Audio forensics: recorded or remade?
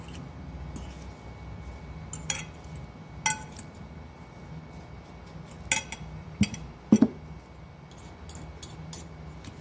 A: recorded